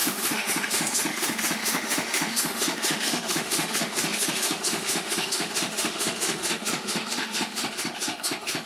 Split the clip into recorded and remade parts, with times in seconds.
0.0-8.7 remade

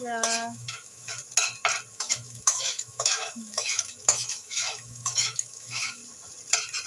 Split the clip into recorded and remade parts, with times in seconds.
0.0-1.2 remade; 1.2-1.9 recorded; 1.9-6.0 remade; 6.0-6.9 recorded

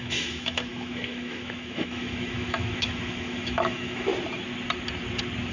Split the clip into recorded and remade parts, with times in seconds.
0.0-4.1 remade; 4.1-5.5 recorded

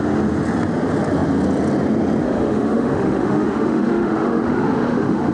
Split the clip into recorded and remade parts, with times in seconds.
0.0-2.2 recorded; 2.2-5.3 remade